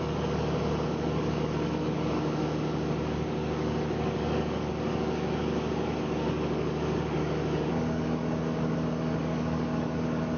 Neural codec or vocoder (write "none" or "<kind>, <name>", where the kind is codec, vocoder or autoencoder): codec, DAC